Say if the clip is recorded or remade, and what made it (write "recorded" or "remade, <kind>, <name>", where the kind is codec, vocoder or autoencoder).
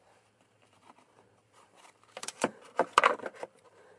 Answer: remade, vocoder, BigVGAN v2